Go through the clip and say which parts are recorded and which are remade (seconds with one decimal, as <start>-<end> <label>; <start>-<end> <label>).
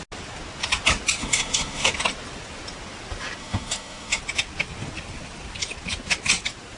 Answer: 0.0-1.2 recorded; 1.2-1.9 remade; 1.9-3.4 recorded; 3.4-4.2 remade; 4.2-6.8 recorded